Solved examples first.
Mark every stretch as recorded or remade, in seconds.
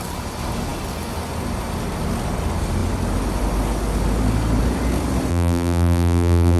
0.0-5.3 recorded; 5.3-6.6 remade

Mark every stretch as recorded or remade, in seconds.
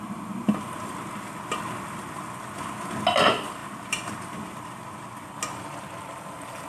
0.0-6.7 recorded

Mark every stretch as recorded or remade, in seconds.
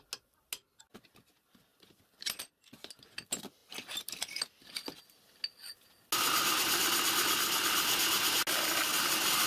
0.0-1.7 recorded; 1.7-2.5 remade; 2.5-9.5 recorded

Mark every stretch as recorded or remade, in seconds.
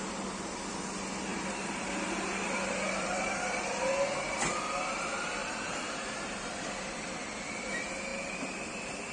0.0-1.3 recorded; 1.3-3.9 remade; 3.9-5.4 recorded; 5.4-5.9 remade; 5.9-9.1 recorded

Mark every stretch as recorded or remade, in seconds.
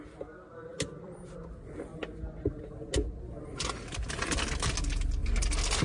0.0-0.7 recorded; 0.7-1.3 remade; 1.3-5.2 recorded; 5.2-5.8 remade